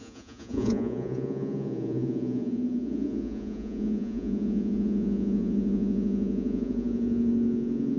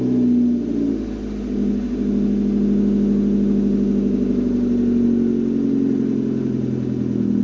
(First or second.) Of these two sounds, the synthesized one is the first